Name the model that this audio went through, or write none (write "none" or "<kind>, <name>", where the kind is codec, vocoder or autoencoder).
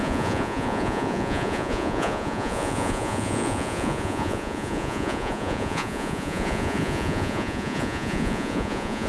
vocoder, Vocos